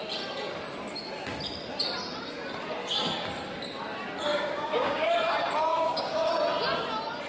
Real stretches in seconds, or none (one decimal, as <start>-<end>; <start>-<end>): 0.0-4.3; 5.1-5.7; 6.3-7.3